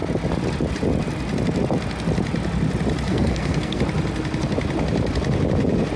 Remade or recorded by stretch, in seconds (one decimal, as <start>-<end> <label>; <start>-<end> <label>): 0.0-3.1 recorded; 3.1-3.8 remade; 3.8-6.0 recorded